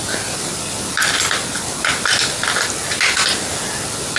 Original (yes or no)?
yes